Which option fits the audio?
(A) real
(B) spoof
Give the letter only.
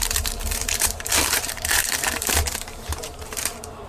B